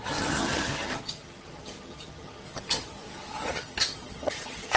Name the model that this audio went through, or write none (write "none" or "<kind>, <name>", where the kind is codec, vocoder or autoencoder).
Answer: vocoder, HiFi-GAN